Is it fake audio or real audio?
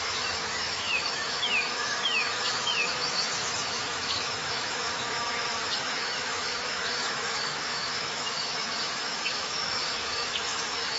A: fake